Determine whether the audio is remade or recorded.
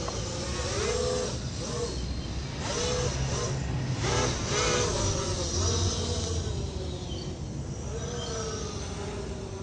recorded